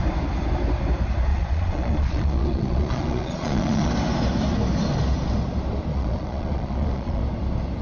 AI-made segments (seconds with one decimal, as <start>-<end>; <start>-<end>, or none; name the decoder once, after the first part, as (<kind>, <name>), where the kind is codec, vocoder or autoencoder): 1.3-3.9 (vocoder, Vocos); 5.9-7.2